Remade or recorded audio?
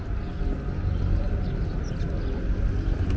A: recorded